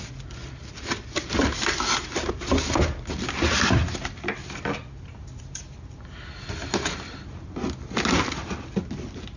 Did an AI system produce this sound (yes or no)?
no